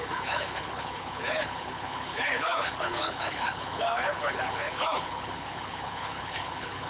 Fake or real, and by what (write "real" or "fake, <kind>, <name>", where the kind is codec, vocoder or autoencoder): fake, codec, HILCodec